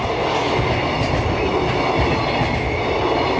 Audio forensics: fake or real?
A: real